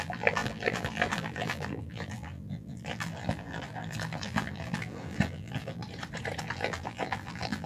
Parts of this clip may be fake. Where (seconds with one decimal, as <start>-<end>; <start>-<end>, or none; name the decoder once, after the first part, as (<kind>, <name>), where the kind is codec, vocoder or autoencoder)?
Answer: 0.0-5.8 (vocoder, BigVGAN v2); 6.4-7.7